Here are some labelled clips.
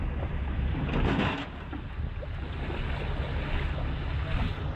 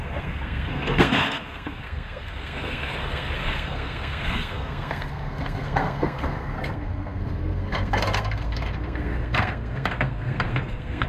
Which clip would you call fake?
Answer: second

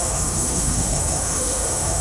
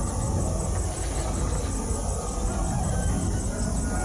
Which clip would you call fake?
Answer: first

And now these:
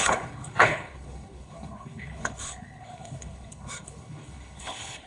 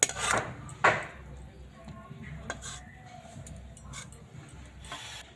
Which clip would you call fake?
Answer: first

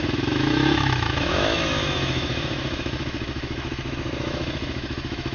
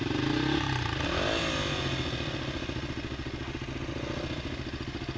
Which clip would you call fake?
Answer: first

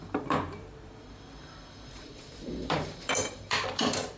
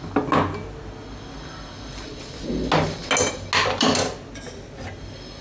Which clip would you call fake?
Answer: first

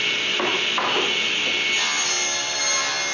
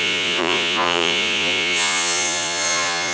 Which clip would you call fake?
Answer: second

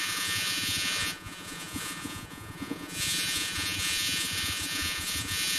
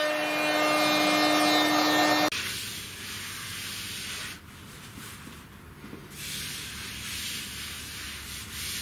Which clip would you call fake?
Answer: first